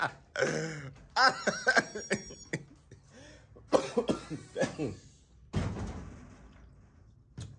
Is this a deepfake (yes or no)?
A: no